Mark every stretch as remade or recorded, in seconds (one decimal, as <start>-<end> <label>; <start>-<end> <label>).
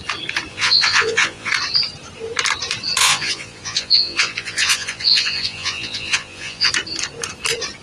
0.0-0.5 recorded; 0.5-1.5 remade; 1.5-3.0 recorded; 3.0-6.7 remade; 6.7-7.8 recorded